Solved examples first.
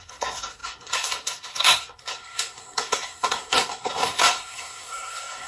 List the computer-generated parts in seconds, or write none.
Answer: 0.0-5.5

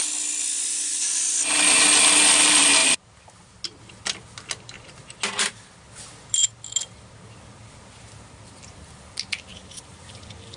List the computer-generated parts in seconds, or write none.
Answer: 9.5-10.1

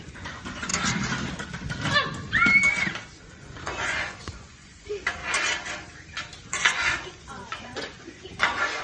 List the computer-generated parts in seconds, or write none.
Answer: 0.0-0.7; 3.2-5.2; 6.4-8.8